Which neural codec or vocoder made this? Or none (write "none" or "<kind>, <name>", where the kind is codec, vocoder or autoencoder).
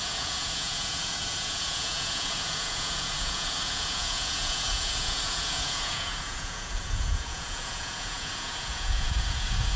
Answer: vocoder, Vocos